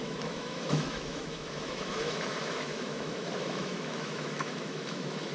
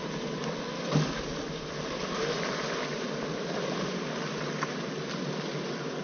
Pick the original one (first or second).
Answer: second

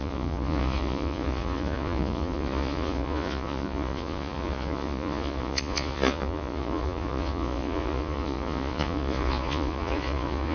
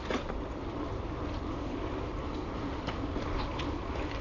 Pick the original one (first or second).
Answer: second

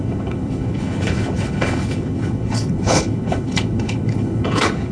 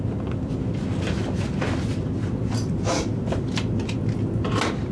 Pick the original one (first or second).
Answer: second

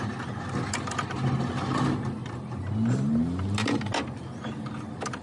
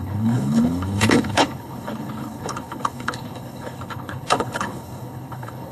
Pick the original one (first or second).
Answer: first